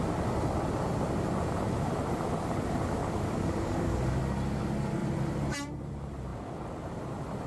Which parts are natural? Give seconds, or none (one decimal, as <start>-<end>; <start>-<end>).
0.0-3.0; 4.2-7.5